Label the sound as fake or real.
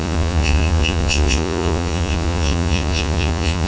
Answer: fake